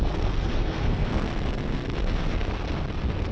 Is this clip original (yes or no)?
no